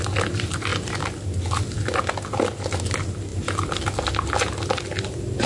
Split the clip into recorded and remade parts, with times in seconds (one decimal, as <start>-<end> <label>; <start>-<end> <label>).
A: 0.0-5.5 recorded